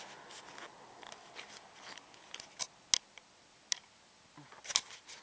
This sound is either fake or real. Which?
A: real